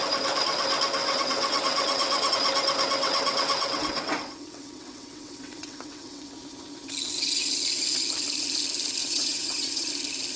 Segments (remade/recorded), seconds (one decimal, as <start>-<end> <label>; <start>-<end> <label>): 0.0-1.0 recorded; 1.0-2.3 remade; 2.3-3.0 recorded; 3.0-6.3 remade; 6.3-9.0 recorded; 9.0-9.9 remade; 9.9-10.4 recorded